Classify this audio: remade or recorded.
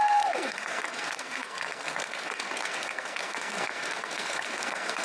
remade